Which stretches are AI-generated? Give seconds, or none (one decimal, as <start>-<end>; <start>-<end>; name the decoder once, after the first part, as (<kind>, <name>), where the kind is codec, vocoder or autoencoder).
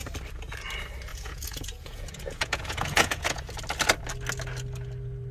1.1-3.4 (vocoder, Vocos)